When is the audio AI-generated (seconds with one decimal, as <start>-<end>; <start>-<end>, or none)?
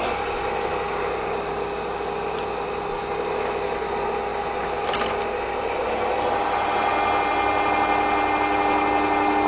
none